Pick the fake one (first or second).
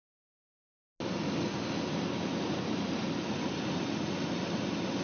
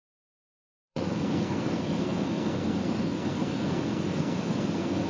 second